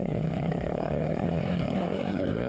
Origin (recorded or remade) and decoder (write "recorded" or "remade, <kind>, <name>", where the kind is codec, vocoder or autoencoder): remade, codec, SNAC